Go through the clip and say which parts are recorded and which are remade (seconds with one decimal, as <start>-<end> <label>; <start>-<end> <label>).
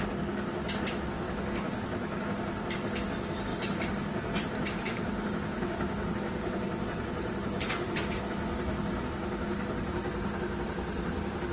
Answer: 0.0-3.5 recorded; 3.5-8.2 remade; 8.2-11.5 recorded